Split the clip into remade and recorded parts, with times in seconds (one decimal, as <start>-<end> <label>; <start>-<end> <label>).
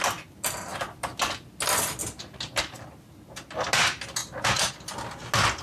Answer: 0.0-4.2 recorded; 4.2-4.7 remade; 4.7-5.6 recorded